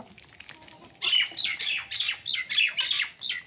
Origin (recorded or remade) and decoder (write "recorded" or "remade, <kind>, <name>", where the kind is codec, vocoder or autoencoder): recorded